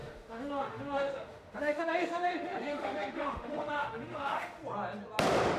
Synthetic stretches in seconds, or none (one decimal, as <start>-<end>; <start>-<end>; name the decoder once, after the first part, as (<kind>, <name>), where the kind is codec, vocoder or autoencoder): 0.0-4.6 (autoencoder, DAC-VAE)